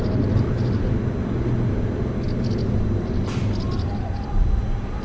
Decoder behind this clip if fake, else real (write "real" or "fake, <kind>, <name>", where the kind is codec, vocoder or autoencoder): real